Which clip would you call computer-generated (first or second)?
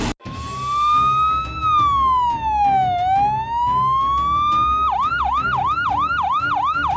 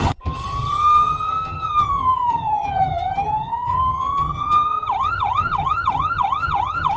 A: second